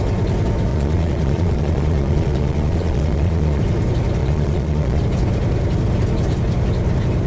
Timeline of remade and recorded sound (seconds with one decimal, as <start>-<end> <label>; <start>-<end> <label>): 0.0-0.7 recorded; 0.7-3.6 remade; 3.6-4.2 recorded; 4.2-5.0 remade; 5.0-7.3 recorded